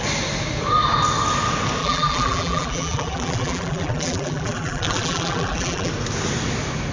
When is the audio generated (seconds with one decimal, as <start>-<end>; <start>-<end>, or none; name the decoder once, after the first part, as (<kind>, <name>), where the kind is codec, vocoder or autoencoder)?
1.8-5.9 (vocoder, BigVGAN v2)